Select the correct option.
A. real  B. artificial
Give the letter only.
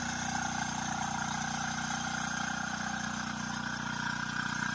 A